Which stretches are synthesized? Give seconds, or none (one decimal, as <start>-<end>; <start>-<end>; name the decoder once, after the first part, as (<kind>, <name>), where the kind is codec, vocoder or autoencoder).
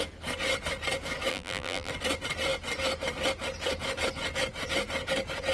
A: 1.3-1.9 (vocoder, BigVGAN v2)